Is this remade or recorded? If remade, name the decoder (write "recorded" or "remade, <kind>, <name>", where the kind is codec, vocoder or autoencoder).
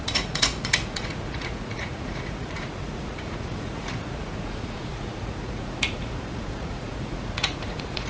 remade, vocoder, Vocos